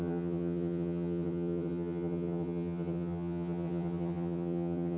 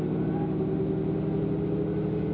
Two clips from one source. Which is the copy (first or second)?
first